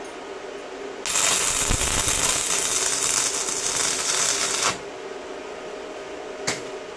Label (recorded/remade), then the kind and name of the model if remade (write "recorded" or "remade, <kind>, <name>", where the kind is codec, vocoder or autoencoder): recorded